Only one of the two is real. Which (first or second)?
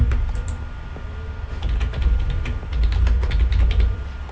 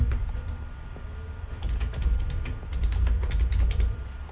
first